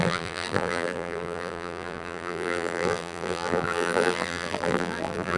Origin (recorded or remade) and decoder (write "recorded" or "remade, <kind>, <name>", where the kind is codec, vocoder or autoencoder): remade, vocoder, BigVGAN v2